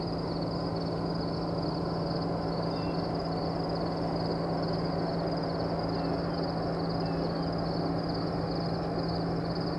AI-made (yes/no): no